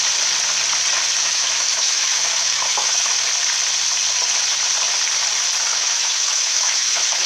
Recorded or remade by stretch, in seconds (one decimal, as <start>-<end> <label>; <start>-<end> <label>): 0.0-1.2 recorded; 1.2-3.1 remade; 3.1-5.7 recorded; 5.7-7.3 remade